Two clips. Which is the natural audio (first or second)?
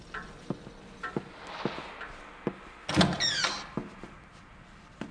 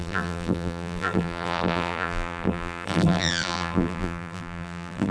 first